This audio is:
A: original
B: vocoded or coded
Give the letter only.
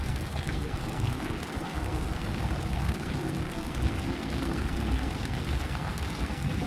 B